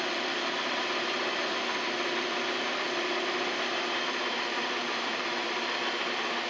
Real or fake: fake